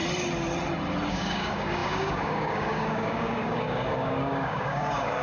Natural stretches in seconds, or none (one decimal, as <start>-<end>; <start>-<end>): 0.0-1.1